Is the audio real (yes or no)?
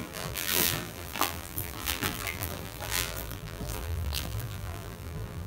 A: no